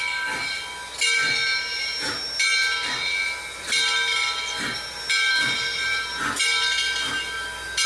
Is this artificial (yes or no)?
no